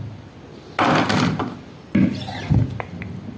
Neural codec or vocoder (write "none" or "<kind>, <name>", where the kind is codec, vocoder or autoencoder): none